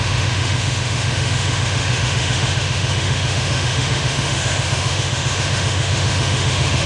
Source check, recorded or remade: remade